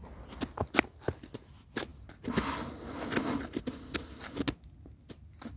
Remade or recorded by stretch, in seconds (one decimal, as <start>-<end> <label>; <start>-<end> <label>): 0.0-5.6 recorded